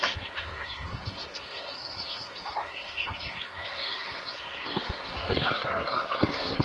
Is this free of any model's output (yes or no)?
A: no